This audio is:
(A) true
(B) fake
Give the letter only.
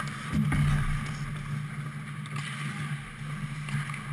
A